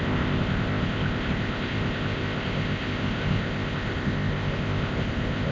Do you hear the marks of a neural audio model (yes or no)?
yes